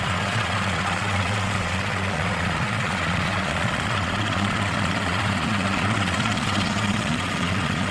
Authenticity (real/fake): fake